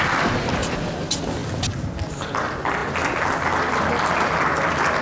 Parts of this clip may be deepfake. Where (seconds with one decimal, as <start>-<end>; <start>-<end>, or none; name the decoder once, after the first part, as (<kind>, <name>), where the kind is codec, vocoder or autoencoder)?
none